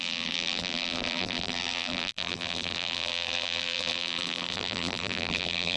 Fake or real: fake